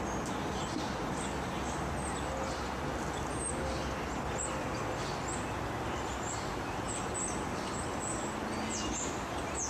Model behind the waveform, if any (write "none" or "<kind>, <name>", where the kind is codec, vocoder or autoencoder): none